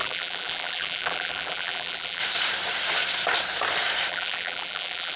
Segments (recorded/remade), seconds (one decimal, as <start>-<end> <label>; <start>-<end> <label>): 0.0-2.2 remade; 2.2-4.1 recorded; 4.1-5.2 remade